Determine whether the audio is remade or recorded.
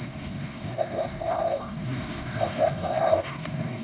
remade